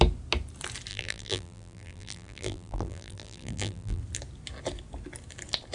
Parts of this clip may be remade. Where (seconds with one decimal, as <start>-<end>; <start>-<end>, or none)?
0.9-4.0